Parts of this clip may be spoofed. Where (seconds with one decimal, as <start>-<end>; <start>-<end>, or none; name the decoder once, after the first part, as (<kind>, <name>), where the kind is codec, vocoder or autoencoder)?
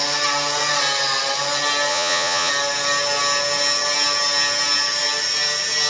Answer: 1.9-2.5 (vocoder, Vocos)